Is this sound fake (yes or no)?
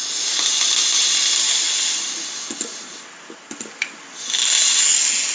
no